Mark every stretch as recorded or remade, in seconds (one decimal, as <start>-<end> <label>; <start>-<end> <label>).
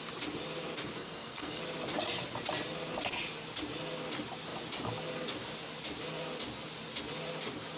0.0-1.0 recorded; 1.0-1.6 remade; 1.6-7.8 recorded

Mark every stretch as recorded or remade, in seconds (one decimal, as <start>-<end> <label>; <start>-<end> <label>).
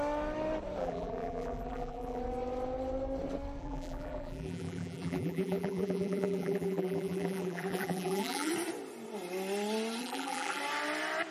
0.0-0.8 recorded; 0.8-2.2 remade; 2.2-3.6 recorded; 3.6-8.5 remade; 8.5-10.0 recorded; 10.0-10.6 remade; 10.6-11.3 recorded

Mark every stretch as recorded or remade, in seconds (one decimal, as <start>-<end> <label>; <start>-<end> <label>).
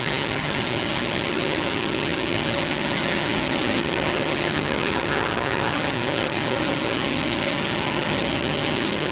0.0-9.1 remade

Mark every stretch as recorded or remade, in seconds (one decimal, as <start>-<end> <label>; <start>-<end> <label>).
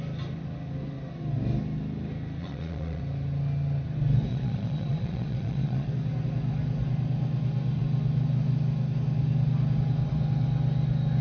0.0-2.4 recorded; 2.4-3.0 remade; 3.0-4.3 recorded; 4.3-5.9 remade; 5.9-11.2 recorded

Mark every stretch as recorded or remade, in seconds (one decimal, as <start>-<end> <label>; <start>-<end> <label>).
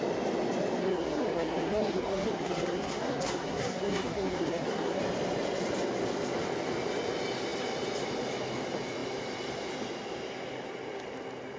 0.0-0.8 recorded; 0.8-5.0 remade; 5.0-11.6 recorded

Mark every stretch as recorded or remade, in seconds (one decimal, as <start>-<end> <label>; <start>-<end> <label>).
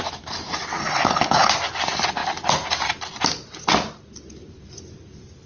0.0-0.8 recorded; 0.8-1.5 remade; 1.5-5.5 recorded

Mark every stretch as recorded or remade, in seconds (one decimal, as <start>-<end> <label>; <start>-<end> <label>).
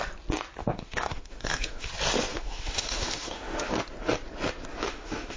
0.0-0.6 recorded; 0.6-1.9 remade; 1.9-2.3 recorded; 2.3-3.7 remade; 3.7-4.7 recorded; 4.7-5.4 remade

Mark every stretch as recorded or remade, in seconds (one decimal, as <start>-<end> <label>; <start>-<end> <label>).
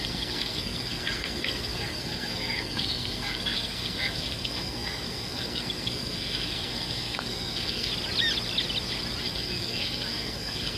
0.0-7.9 remade; 7.9-9.2 recorded; 9.2-10.8 remade